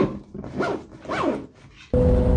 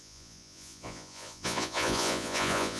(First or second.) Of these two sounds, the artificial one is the second